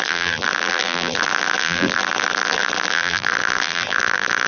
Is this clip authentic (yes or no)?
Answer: no